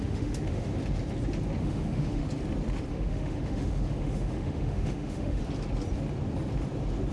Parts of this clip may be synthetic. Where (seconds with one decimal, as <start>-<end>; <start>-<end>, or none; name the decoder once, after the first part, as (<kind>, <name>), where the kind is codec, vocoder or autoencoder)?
0.0-0.7 (autoencoder, DAC-VAE); 1.6-2.2; 2.9-5.4